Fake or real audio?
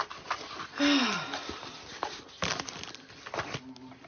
real